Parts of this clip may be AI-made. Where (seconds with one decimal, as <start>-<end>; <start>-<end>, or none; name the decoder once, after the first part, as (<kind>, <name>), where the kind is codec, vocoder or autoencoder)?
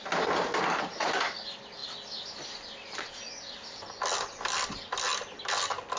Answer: none